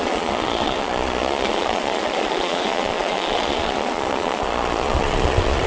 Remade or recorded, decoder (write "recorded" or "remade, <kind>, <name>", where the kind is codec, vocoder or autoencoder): remade, vocoder, Vocos